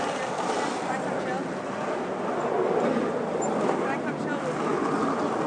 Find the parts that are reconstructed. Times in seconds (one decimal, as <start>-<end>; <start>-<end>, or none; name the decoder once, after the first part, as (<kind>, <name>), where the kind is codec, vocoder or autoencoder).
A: none